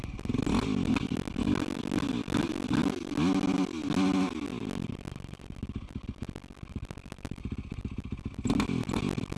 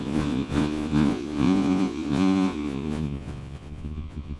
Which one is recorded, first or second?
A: first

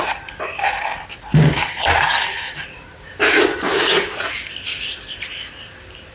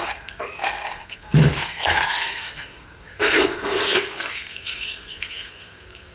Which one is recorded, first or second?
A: first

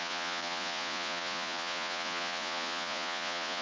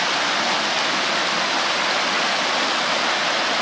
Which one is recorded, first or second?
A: second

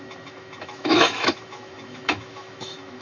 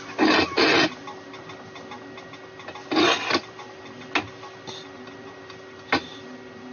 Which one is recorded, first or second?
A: second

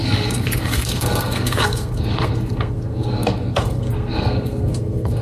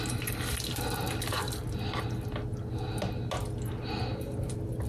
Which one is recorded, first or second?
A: second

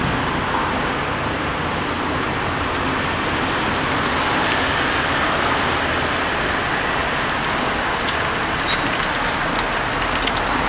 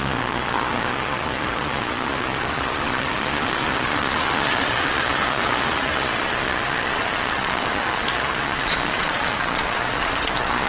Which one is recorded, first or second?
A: first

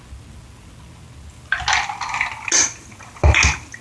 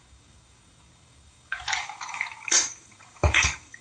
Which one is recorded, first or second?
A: first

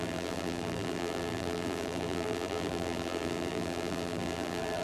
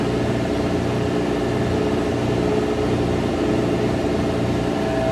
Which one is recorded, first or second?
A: second